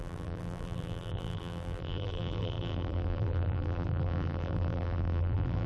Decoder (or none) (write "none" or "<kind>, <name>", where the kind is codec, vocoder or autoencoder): vocoder, BigVGAN v2